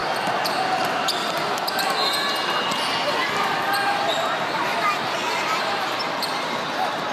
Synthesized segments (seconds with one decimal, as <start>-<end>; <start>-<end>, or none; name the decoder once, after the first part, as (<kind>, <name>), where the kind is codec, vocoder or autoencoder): 4.1-6.2 (vocoder, BigVGAN v2)